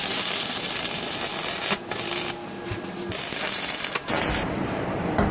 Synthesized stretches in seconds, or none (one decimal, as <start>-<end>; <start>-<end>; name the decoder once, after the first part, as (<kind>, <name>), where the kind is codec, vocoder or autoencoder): none